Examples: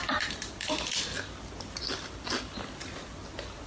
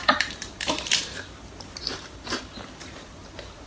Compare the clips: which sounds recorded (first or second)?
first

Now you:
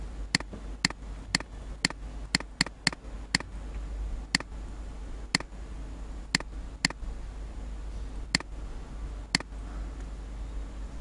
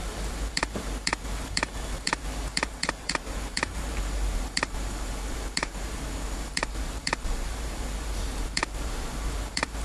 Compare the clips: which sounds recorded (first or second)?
first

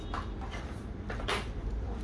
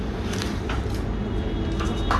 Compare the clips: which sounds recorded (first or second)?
second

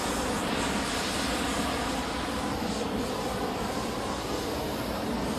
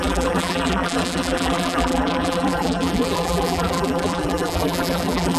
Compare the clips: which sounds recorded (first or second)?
first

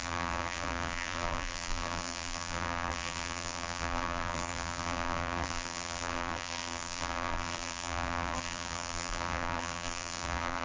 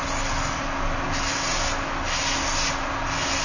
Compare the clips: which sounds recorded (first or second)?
second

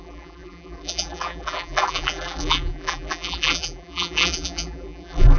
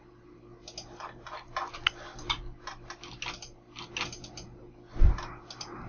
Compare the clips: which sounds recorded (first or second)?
second